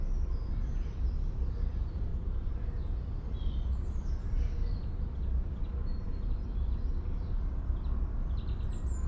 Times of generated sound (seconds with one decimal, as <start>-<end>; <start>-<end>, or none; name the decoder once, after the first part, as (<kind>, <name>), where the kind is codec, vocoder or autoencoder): 2.1-2.6 (vocoder, BigVGAN v2); 5.9-7.4